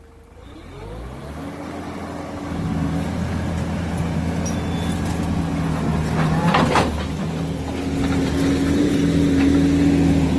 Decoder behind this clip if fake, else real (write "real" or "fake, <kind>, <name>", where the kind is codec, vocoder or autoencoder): real